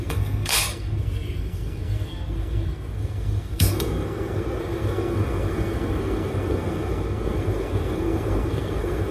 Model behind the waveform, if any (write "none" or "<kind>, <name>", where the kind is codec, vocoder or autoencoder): codec, SNAC